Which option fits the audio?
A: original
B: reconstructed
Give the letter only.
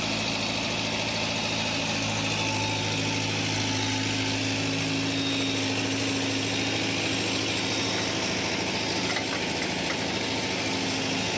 A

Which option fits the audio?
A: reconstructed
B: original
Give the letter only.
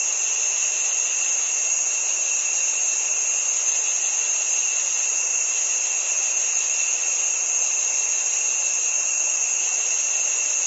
B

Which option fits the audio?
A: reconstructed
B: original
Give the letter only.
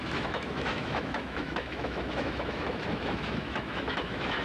A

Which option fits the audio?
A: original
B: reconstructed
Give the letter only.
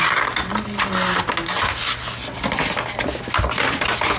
A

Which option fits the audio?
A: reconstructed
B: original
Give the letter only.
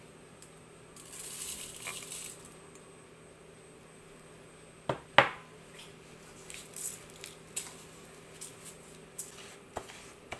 B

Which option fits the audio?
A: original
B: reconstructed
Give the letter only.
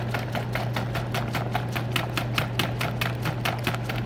A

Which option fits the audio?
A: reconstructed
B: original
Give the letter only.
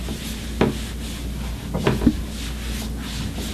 B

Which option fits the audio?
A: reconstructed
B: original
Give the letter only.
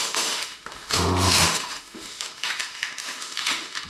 A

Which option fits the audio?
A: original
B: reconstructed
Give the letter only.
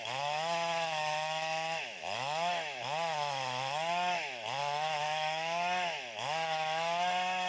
B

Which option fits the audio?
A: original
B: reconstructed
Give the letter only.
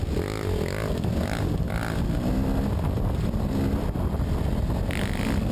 A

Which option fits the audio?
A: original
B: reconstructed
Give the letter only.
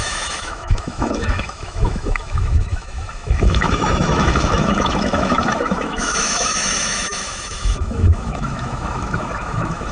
B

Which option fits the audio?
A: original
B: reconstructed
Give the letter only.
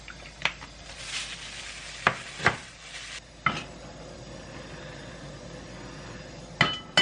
A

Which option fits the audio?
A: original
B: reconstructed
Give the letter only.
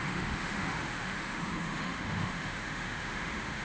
B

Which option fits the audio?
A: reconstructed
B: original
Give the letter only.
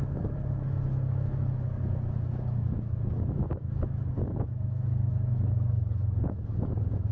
A